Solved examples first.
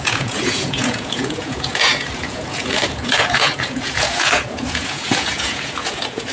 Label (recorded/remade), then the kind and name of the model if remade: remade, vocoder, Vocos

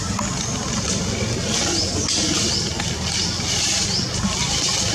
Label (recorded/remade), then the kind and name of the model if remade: recorded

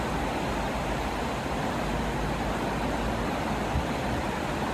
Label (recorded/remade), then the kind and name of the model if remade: recorded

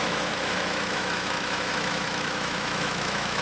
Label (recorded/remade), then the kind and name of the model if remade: remade, autoencoder, DAC-VAE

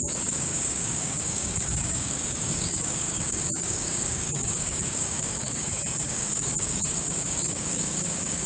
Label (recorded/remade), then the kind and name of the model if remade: remade, codec, DAC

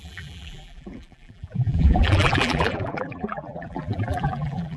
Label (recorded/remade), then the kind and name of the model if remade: remade, vocoder, BigVGAN v2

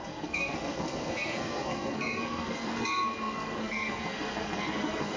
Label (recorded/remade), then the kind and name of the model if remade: remade, codec, SNAC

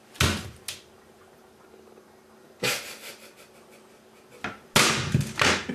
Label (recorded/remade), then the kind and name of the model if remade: recorded